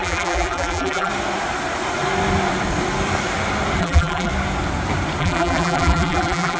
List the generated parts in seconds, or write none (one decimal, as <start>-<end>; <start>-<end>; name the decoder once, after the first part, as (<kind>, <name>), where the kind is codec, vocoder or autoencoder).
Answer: 0.0-1.1 (vocoder, BigVGAN v2); 3.8-4.3; 5.2-6.6